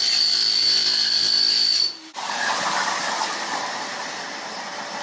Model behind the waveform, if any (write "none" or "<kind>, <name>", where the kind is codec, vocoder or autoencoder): vocoder, BigVGAN v2